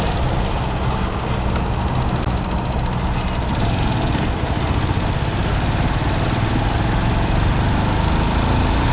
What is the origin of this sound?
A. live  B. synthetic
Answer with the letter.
A